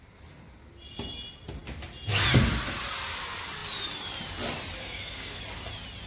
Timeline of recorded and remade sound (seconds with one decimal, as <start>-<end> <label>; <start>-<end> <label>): 0.0-4.8 recorded; 4.8-5.4 remade; 5.4-6.1 recorded